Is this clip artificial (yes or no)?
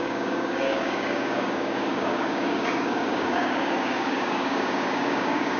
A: yes